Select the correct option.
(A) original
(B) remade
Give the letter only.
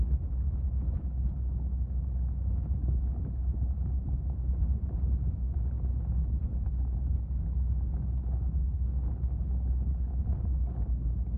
A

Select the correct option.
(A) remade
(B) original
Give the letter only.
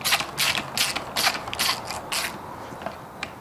B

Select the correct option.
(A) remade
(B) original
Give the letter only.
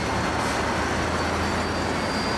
B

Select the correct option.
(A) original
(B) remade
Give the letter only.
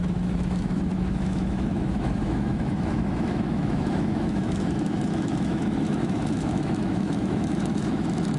B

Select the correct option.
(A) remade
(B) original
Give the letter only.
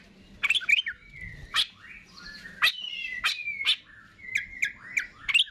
B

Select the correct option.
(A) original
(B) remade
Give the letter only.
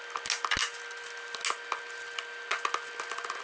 A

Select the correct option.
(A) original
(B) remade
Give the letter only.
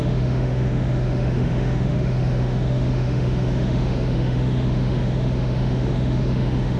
B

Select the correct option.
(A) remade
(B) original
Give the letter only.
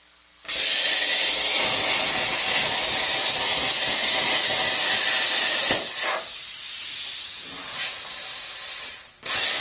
B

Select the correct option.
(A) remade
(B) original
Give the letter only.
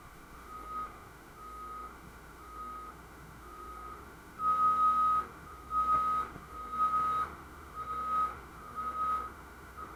A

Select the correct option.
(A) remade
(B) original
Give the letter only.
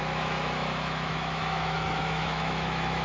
A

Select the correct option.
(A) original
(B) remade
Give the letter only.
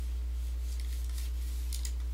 A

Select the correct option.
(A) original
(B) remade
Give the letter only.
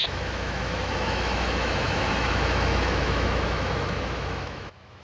B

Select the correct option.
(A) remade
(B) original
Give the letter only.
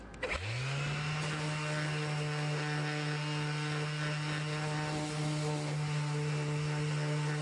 B